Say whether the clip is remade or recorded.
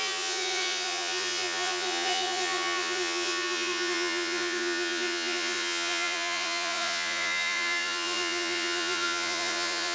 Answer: remade